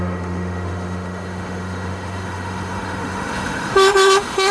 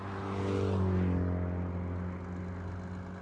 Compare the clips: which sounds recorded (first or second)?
second